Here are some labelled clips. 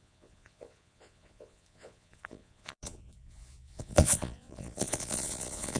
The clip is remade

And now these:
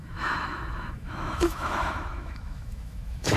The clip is remade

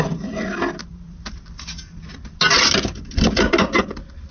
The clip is recorded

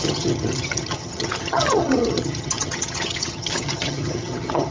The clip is remade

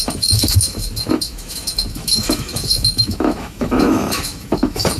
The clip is remade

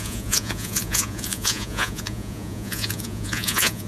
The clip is remade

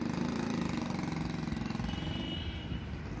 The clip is recorded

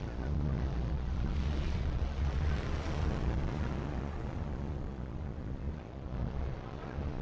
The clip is remade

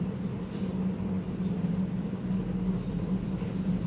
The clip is recorded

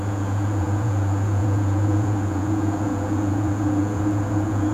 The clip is remade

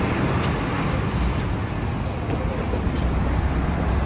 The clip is recorded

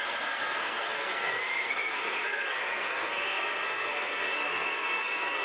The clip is remade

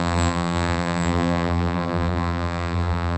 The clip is remade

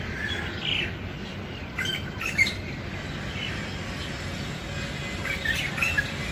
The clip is recorded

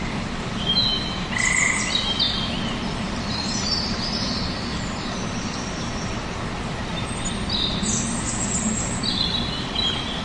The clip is recorded